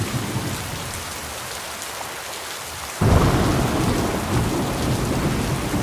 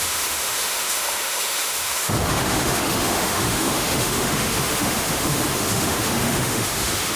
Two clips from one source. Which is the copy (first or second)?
second